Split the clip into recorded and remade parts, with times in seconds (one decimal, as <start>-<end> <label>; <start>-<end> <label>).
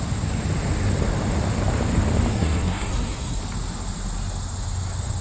0.0-2.3 recorded; 2.3-3.4 remade; 3.4-5.2 recorded